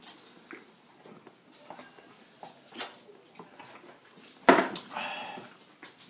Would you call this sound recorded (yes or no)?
yes